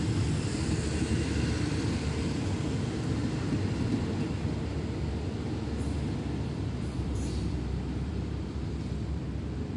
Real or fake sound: real